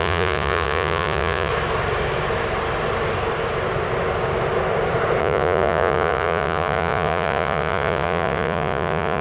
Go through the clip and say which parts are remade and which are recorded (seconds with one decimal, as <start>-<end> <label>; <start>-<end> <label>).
0.0-1.5 remade; 1.5-5.2 recorded; 5.2-9.2 remade